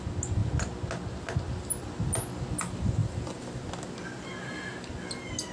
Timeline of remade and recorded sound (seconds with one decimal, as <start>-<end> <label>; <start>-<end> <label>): 0.0-3.0 recorded; 3.0-3.6 remade; 3.6-5.5 recorded